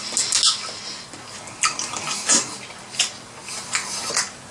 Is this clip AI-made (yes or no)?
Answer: no